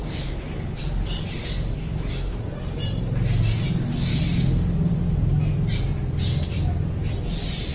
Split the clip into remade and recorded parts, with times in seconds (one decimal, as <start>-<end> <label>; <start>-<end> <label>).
0.0-2.1 remade; 2.1-4.1 recorded; 4.1-4.9 remade; 4.9-7.7 recorded